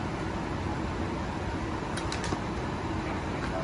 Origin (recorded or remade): recorded